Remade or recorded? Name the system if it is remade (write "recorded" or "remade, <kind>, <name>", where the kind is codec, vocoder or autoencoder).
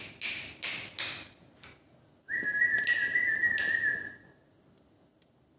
recorded